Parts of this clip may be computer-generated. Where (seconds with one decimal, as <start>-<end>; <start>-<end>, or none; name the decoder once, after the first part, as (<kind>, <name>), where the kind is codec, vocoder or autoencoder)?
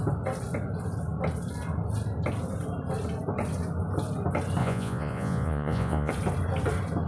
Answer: 4.6-6.1 (vocoder, Vocos)